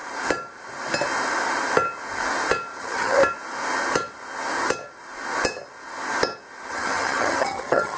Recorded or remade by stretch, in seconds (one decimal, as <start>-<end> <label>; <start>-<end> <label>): 0.0-2.8 recorded; 2.8-3.2 remade; 3.2-6.7 recorded; 6.7-8.0 remade